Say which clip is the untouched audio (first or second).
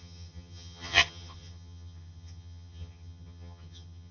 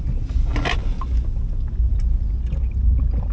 second